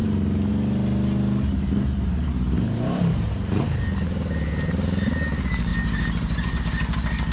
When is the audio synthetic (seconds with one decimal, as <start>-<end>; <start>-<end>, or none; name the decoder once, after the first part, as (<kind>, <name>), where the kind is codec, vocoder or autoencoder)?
0.0-0.5 (vocoder, BigVGAN v2); 5.7-6.6